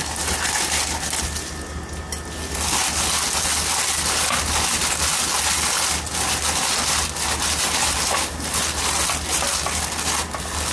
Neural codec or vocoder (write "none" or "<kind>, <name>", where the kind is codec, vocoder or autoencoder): none